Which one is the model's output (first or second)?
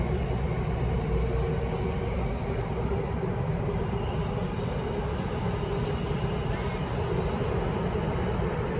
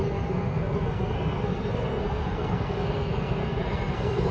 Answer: second